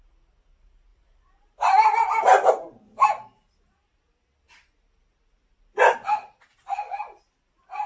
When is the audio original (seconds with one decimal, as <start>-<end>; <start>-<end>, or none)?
0.0-0.9; 2.5-7.9